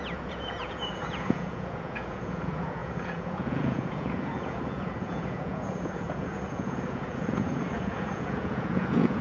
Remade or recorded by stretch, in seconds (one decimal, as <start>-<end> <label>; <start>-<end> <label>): 0.0-9.2 remade